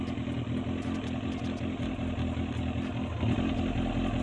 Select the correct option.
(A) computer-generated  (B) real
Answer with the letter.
B